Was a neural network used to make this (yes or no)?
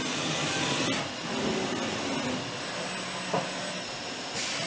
no